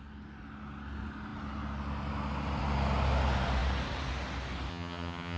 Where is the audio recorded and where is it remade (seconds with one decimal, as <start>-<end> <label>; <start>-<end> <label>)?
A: 0.0-4.7 recorded; 4.7-5.4 remade